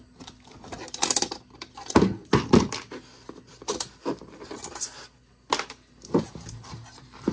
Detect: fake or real real